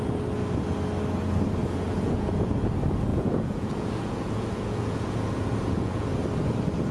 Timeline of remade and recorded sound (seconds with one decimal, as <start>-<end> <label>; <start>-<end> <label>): 0.0-1.6 recorded; 1.6-2.5 remade; 2.5-3.1 recorded; 3.1-6.0 remade; 6.0-6.9 recorded

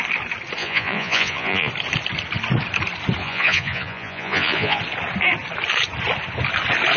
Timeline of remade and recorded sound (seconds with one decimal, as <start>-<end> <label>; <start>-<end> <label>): 0.0-0.6 recorded; 0.6-1.7 remade; 1.7-3.2 recorded; 3.2-4.8 remade; 4.8-7.0 recorded

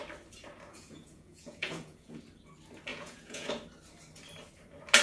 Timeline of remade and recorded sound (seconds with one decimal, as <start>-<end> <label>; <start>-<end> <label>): 0.0-0.7 recorded; 0.7-2.2 remade; 2.2-2.9 recorded; 2.9-3.5 remade; 3.5-5.0 recorded

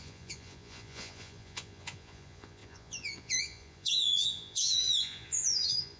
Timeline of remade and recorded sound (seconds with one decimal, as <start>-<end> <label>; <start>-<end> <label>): 0.0-6.0 remade

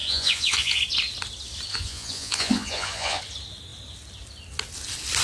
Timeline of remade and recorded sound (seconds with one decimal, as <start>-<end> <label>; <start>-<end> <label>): 0.0-0.8 remade; 0.8-1.7 recorded; 1.7-3.2 remade; 3.2-5.2 recorded

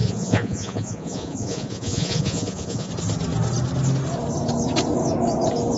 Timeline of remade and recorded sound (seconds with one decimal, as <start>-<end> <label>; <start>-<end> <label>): 0.0-2.9 remade; 2.9-5.8 recorded

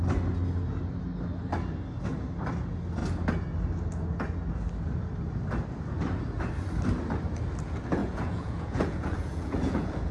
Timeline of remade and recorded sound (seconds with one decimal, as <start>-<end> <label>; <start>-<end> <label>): 0.0-8.0 recorded; 8.0-10.1 remade

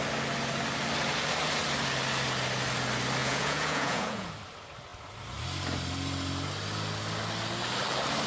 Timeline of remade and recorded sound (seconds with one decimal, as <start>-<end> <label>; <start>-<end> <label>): 0.0-3.2 recorded; 3.2-4.3 remade; 4.3-8.3 recorded